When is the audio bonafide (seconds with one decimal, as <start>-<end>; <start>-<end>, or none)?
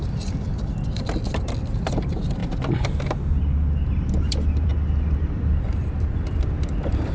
2.4-4.2; 4.7-5.6